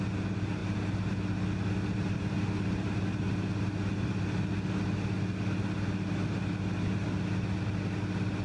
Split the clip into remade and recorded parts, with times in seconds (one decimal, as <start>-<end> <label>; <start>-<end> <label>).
0.0-8.4 recorded